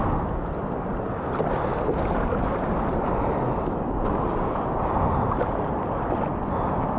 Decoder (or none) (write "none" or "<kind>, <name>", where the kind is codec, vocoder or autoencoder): none